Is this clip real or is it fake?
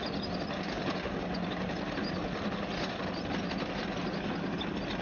real